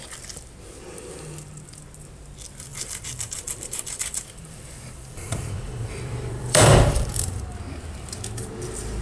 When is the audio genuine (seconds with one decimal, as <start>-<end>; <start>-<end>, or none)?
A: 0.0-2.7; 7.4-9.0